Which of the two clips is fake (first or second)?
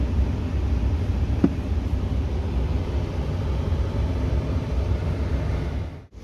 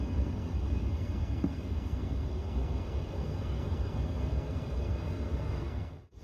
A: second